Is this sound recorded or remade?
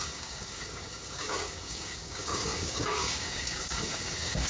remade